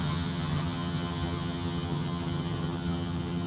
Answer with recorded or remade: remade